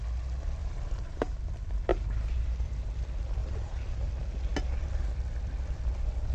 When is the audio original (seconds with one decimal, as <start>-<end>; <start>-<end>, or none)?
0.0-0.6; 1.4-1.9; 2.9-3.4; 4.1-6.3